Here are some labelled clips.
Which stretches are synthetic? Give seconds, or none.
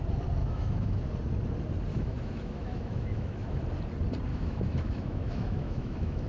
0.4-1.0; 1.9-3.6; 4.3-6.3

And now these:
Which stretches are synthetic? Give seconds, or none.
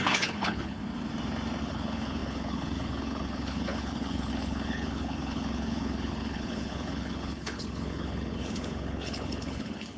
0.0-0.8; 1.6-10.0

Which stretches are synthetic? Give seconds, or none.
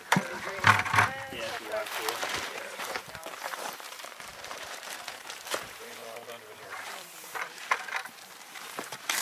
0.0-9.2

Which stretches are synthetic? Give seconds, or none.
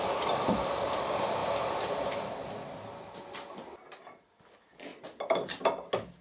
none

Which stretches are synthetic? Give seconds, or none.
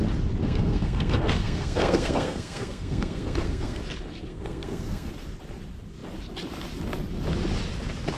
0.4-3.8; 4.3-5.1